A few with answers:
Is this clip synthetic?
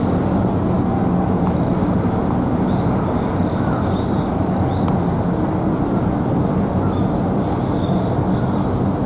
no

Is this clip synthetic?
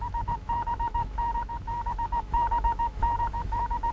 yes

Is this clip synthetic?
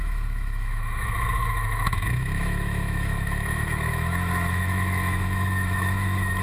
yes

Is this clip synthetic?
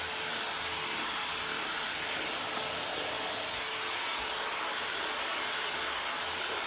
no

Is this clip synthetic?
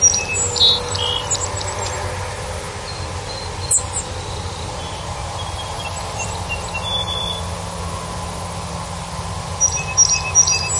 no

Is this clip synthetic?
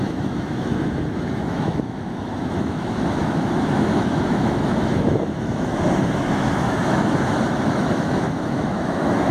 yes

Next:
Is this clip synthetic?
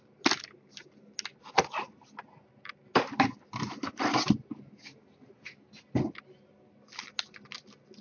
no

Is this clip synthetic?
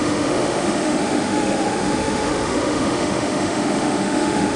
yes